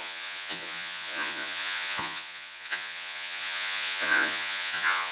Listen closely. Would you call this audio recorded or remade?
remade